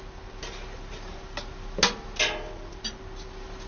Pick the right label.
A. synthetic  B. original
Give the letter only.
B